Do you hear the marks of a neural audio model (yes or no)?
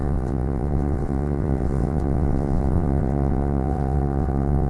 yes